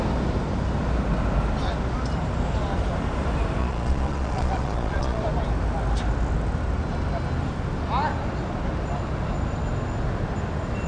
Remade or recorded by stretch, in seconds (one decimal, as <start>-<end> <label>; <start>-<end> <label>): 0.0-3.6 recorded; 3.6-5.2 remade; 5.2-10.9 recorded